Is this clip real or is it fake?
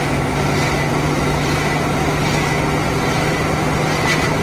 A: real